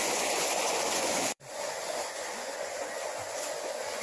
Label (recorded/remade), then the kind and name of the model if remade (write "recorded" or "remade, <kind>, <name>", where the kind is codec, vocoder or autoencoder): remade, vocoder, Vocos